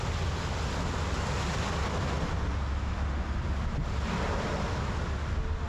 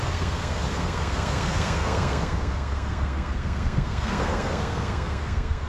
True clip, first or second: first